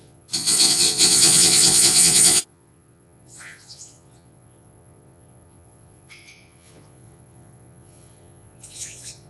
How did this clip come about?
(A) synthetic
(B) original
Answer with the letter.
A